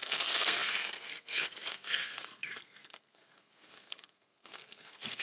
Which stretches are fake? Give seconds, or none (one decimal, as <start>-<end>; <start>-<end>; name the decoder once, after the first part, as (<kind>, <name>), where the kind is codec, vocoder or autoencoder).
0.0-5.2 (codec, SNAC)